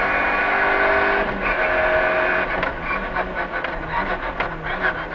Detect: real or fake real